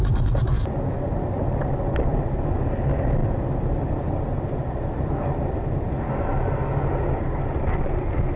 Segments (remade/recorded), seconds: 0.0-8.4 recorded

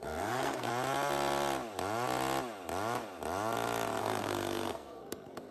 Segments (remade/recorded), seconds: 0.0-0.7 remade; 0.7-4.0 recorded; 4.0-5.5 remade

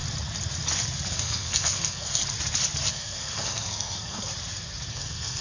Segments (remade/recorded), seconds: 0.0-1.1 recorded; 1.1-2.2 remade; 2.2-2.9 recorded; 2.9-4.3 remade; 4.3-4.9 recorded; 4.9-5.4 remade